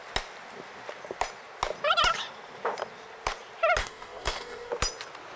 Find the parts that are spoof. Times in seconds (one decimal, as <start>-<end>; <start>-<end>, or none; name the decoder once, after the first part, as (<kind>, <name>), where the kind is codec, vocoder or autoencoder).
3.8-4.7 (codec, DAC)